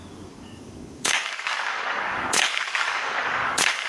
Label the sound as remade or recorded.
remade